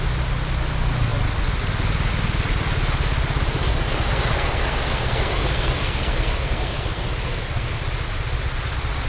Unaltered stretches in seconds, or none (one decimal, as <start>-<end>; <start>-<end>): 0.0-3.7; 7.7-9.1